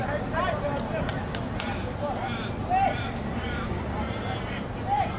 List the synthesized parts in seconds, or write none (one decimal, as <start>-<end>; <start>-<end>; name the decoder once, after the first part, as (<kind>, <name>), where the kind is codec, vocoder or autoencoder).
0.0-1.1 (vocoder, BigVGAN v2); 4.2-5.2